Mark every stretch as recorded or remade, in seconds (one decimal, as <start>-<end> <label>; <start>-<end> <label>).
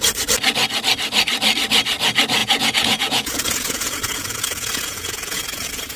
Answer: 0.0-2.4 recorded; 2.4-6.0 remade